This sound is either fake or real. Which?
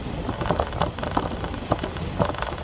real